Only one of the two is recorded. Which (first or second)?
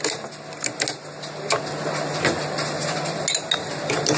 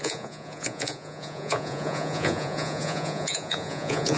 first